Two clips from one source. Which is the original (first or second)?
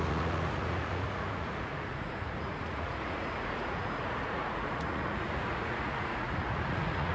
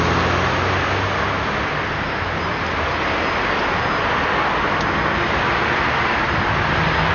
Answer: second